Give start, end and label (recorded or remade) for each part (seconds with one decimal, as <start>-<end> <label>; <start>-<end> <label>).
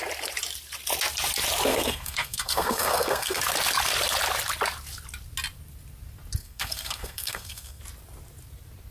0.0-1.7 recorded; 1.7-3.4 remade; 3.4-6.4 recorded; 6.4-7.8 remade; 7.8-8.9 recorded